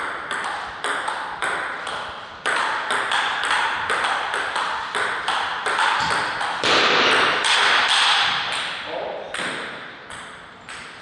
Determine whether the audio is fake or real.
fake